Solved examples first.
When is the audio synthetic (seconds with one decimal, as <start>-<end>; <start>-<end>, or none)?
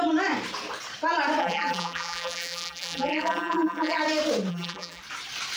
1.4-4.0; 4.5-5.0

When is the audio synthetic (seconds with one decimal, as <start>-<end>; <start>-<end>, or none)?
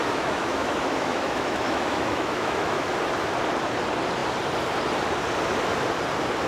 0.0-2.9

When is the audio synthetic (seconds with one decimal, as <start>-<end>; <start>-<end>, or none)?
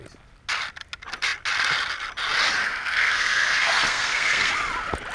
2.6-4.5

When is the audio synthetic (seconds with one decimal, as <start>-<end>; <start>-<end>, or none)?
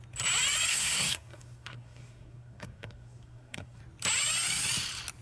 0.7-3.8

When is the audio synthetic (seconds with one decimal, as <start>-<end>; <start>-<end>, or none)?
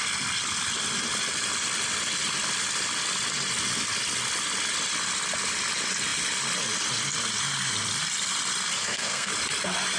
8.8-9.3